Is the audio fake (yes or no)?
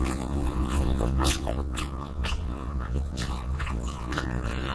yes